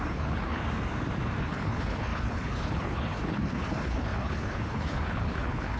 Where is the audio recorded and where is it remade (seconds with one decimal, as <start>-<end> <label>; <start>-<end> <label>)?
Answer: 0.0-0.6 remade; 0.6-1.4 recorded; 1.4-5.8 remade